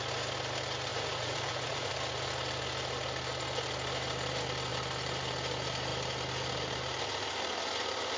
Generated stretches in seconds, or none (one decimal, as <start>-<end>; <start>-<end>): 0.9-1.9